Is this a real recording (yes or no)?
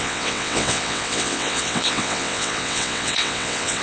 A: no